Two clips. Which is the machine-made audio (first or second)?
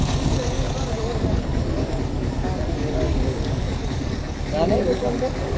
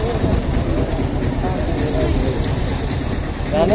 first